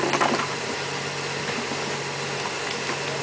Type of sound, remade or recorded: recorded